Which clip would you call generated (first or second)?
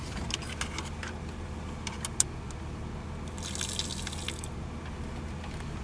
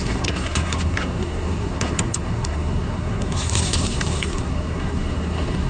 second